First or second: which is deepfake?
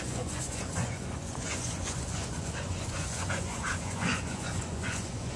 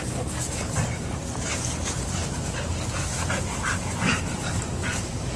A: first